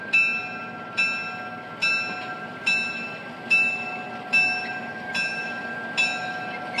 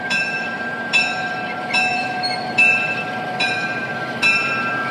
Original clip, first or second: first